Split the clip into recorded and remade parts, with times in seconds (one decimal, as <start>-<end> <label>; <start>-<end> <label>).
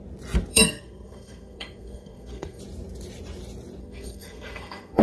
0.0-0.5 recorded; 0.5-2.6 remade; 2.6-3.8 recorded; 3.8-5.0 remade